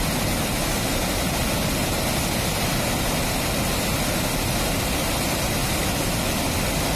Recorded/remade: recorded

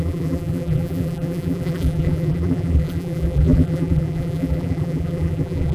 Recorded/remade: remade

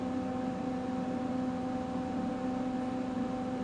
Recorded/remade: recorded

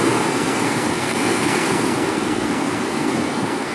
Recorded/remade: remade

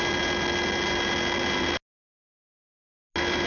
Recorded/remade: recorded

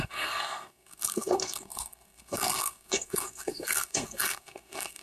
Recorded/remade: remade